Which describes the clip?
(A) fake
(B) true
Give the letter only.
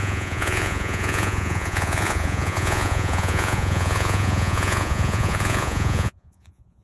A